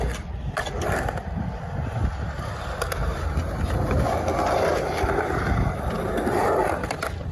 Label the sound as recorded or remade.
recorded